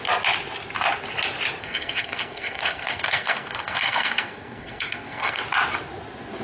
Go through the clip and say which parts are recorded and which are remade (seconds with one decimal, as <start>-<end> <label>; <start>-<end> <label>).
0.0-1.6 recorded; 1.6-5.4 remade; 5.4-6.4 recorded